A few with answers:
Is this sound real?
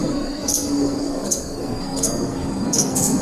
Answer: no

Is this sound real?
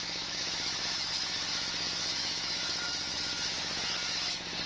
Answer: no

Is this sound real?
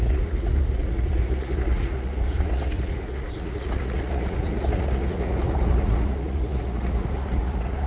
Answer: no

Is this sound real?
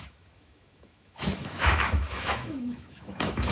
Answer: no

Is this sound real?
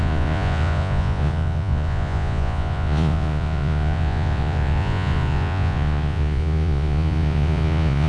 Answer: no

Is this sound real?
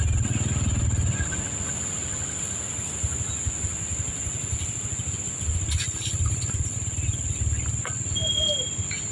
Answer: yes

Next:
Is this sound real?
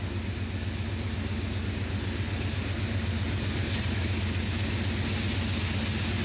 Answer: yes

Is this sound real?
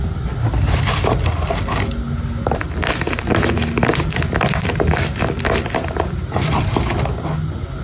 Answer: yes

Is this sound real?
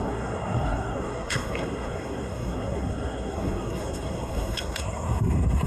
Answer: no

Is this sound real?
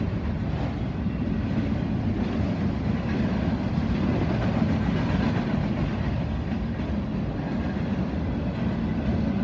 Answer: yes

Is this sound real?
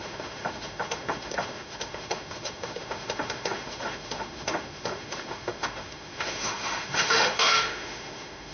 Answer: no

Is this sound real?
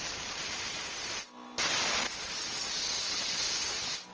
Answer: yes